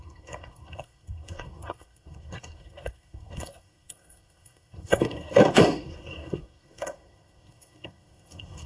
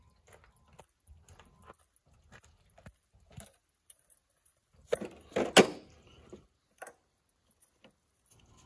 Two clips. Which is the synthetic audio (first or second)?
first